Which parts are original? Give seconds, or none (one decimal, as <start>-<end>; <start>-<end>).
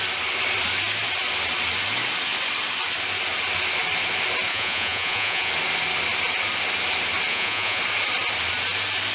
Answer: 0.0-4.5; 5.5-7.3; 7.8-9.1